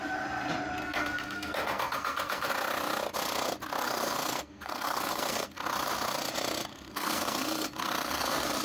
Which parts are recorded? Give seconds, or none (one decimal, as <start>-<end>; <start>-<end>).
0.0-0.8; 2.5-3.8; 5.7-6.7